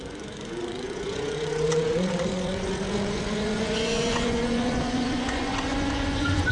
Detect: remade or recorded remade